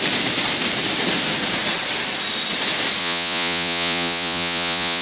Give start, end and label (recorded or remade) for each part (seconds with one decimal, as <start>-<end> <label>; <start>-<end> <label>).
0.0-3.0 recorded; 3.0-5.0 remade